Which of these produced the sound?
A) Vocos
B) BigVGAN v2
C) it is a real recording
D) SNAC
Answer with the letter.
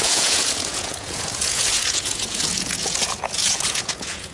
A